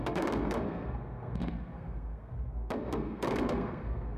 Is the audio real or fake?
fake